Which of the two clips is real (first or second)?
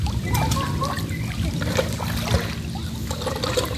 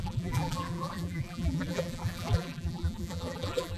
first